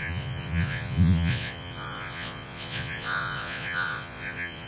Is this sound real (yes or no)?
no